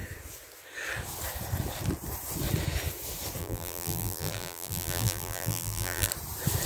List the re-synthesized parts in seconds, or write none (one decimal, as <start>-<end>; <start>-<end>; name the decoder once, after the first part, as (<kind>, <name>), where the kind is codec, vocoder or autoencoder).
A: 3.4-6.1 (vocoder, BigVGAN v2)